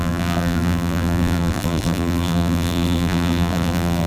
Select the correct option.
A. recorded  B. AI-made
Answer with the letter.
B